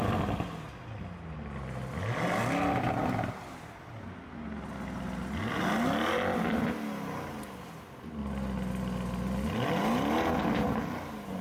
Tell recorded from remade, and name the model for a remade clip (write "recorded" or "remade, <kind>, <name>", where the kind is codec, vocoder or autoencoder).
recorded